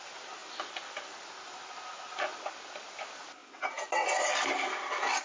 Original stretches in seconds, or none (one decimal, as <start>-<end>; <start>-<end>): 0.0-5.2